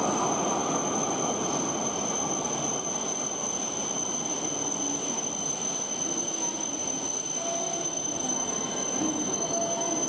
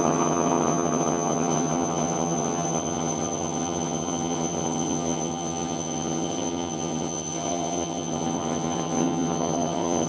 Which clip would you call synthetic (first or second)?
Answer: second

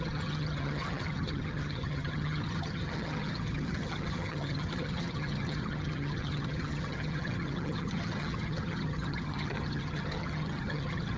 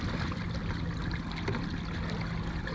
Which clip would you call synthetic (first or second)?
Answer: first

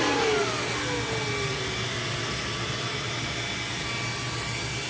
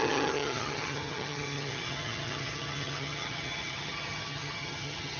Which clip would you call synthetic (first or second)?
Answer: second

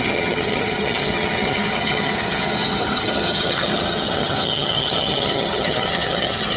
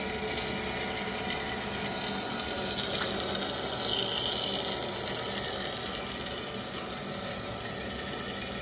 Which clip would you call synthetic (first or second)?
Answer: first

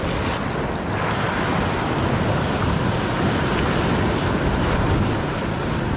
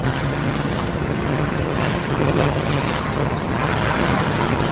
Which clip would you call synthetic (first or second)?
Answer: second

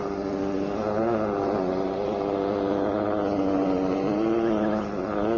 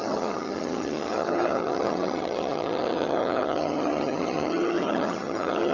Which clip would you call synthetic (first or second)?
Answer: second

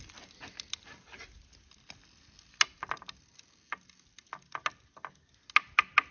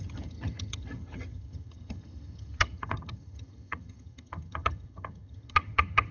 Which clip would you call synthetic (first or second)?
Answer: second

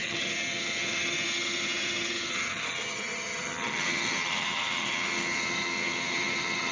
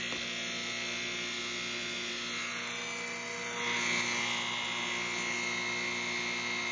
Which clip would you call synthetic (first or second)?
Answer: first